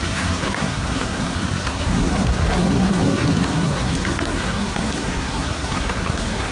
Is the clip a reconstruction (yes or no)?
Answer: yes